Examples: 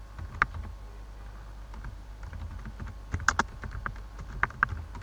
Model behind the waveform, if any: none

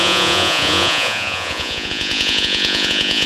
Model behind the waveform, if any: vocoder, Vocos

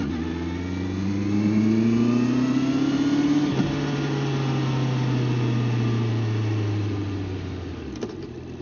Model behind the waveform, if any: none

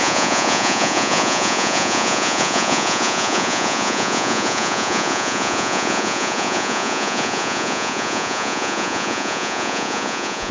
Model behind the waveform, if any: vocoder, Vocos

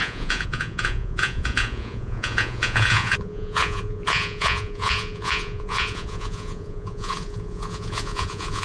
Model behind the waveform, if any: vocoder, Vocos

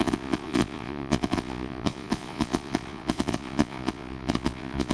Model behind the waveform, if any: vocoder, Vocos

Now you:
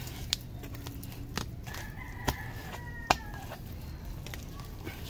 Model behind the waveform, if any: none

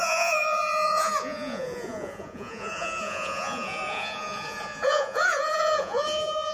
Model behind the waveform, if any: vocoder, Vocos